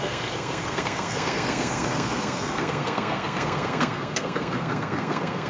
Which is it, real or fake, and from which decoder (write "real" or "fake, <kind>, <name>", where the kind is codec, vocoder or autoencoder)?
fake, codec, SNAC